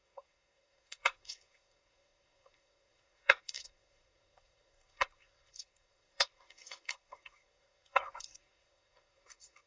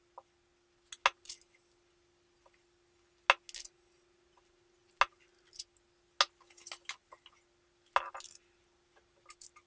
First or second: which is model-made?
first